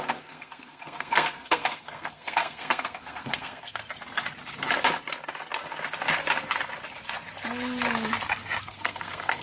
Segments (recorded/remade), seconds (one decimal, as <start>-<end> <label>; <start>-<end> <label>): 0.0-3.8 remade; 3.8-8.6 recorded; 8.6-9.4 remade

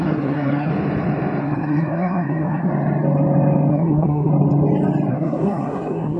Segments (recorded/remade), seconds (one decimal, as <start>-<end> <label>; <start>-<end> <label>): 0.0-0.7 remade; 0.7-1.4 recorded; 1.4-2.7 remade; 2.7-3.7 recorded; 3.7-4.3 remade; 4.3-5.1 recorded; 5.1-6.2 remade